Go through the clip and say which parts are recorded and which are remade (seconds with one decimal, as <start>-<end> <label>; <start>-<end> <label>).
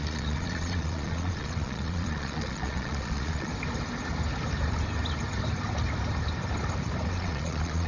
0.0-3.5 remade; 3.5-7.1 recorded; 7.1-7.9 remade